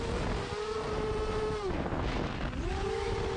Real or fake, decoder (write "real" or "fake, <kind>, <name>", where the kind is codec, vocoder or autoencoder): real